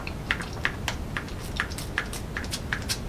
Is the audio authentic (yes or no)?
yes